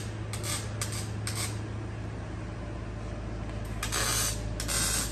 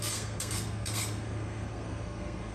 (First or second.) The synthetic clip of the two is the second